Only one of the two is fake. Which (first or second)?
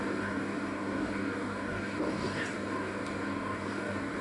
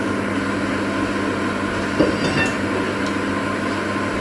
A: first